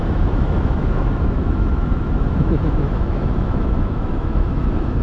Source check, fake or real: fake